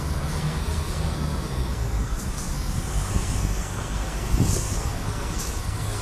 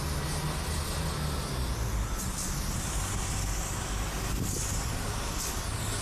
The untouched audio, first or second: second